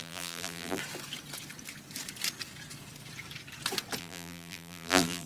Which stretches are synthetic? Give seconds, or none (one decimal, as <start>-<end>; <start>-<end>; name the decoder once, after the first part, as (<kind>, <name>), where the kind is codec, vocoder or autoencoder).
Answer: 0.0-0.8 (vocoder, BigVGAN v2); 4.0-5.3